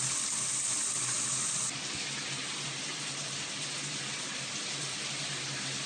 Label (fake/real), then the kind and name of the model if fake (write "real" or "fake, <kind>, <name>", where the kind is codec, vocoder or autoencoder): real